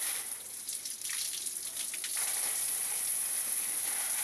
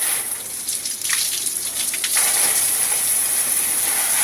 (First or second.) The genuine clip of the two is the first